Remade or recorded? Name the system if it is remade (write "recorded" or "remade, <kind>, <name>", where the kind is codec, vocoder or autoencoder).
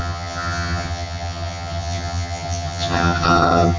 remade, vocoder, HiFi-GAN